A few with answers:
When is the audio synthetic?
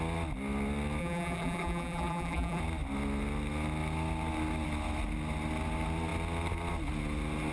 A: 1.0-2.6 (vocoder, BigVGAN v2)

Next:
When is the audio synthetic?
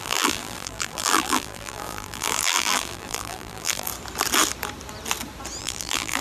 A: 0.0-3.9 (vocoder, BigVGAN v2); 5.6-6.2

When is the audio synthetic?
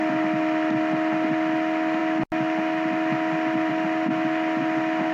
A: none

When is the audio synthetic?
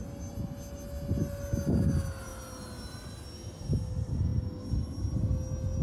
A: none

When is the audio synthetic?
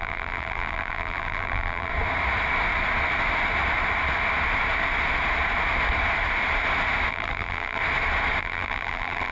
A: 0.0-1.9 (vocoder, BigVGAN v2); 7.1-7.8; 8.4-9.3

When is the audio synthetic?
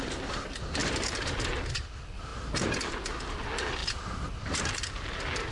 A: 0.8-1.5 (vocoder, BigVGAN v2); 3.8-4.6